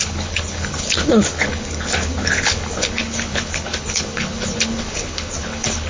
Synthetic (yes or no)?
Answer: yes